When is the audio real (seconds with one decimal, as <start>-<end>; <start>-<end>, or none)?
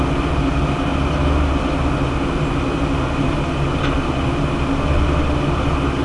0.0-6.0